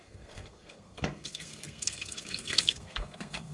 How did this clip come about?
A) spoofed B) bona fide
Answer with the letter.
A